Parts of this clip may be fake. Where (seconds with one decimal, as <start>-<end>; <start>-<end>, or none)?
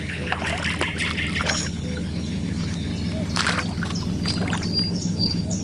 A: 0.0-0.5; 1.4-2.9; 4.9-5.6